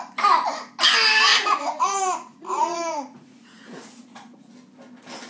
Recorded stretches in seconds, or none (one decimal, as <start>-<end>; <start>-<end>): 0.0-1.3; 4.5-5.3